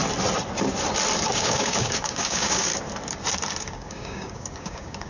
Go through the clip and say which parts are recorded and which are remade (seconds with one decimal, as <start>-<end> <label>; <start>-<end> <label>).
0.0-1.3 recorded; 1.3-2.7 remade; 2.7-3.6 recorded; 3.6-5.1 remade

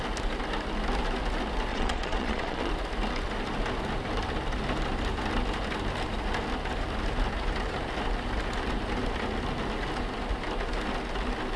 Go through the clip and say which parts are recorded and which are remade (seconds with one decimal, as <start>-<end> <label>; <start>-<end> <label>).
0.0-1.7 recorded; 1.7-2.7 remade; 2.7-11.6 recorded

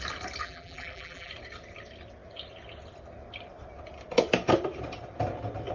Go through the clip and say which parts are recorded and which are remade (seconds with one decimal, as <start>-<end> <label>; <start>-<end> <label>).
0.0-0.4 recorded; 0.4-1.3 remade; 1.3-5.7 recorded

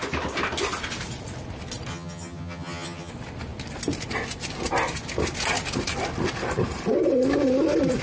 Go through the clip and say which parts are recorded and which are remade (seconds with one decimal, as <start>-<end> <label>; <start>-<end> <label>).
0.0-1.9 recorded; 1.9-3.1 remade; 3.1-8.0 recorded